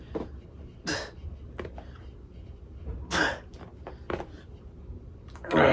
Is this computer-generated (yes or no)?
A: no